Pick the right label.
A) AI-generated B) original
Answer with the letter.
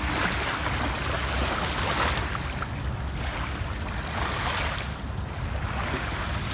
B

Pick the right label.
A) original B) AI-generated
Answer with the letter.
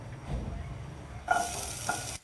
A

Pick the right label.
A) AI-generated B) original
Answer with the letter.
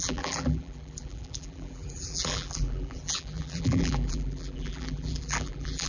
A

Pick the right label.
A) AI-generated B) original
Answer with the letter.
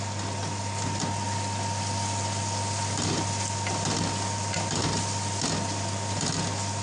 B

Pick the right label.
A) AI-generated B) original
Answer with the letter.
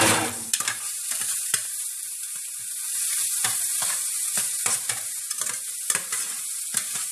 A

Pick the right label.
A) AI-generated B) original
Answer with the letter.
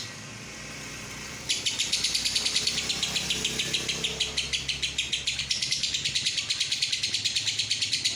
A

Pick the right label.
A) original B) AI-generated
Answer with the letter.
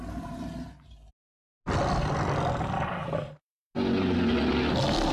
A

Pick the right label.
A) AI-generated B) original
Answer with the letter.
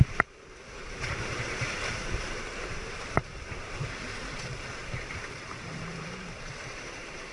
A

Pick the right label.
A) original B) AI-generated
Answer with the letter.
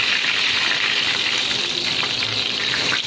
B